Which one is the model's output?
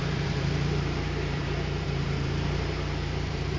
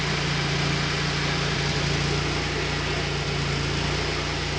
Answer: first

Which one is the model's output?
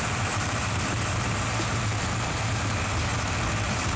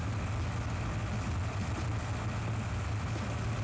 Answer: first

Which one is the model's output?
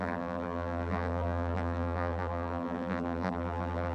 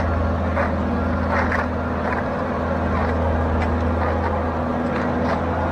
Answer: first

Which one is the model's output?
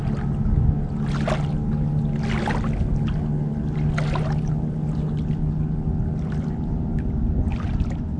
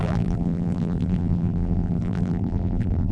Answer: second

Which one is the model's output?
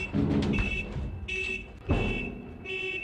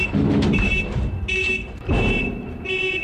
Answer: second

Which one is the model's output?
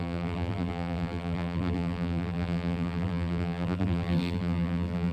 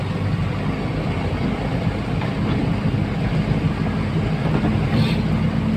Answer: first